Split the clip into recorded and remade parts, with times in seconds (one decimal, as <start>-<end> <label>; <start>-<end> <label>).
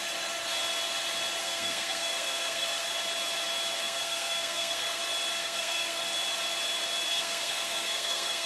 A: 0.0-1.4 recorded; 1.4-2.9 remade; 2.9-3.8 recorded; 3.8-5.0 remade; 5.0-5.4 recorded; 5.4-6.0 remade; 6.0-7.1 recorded; 7.1-8.5 remade